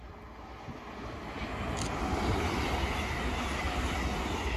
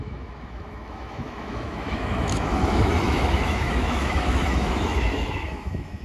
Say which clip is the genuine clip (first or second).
first